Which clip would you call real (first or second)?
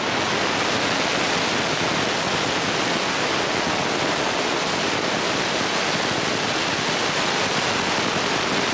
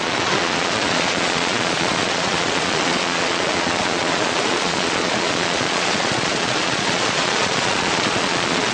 first